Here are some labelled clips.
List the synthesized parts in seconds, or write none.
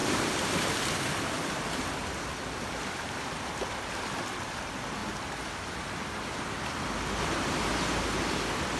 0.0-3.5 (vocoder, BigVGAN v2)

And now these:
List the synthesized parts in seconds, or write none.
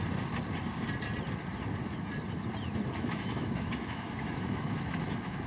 3.0-5.5 (autoencoder, DAC-VAE)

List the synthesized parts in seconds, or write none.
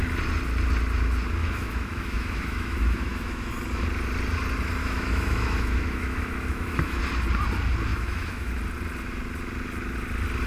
1.4-3.5 (autoencoder, DAC-VAE); 4.8-7.0; 7.9-8.5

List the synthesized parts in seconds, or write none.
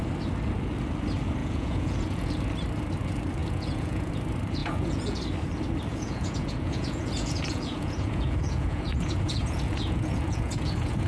1.4-2.3 (vocoder, Vocos); 3.4-4.1; 4.6-5.2; 5.9-11.1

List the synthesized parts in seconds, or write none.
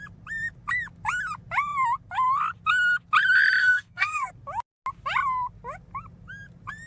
3.6-4.3 (codec, SNAC)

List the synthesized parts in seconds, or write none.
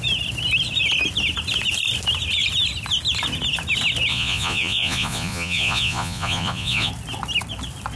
4.1-6.9 (vocoder, Vocos)